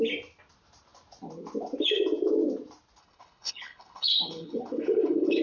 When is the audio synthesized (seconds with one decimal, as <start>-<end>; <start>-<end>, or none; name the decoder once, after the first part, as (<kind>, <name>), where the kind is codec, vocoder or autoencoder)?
3.0-5.4 (codec, HILCodec)